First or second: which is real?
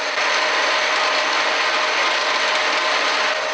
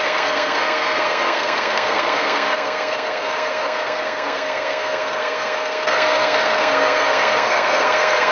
first